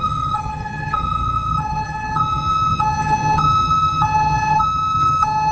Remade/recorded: remade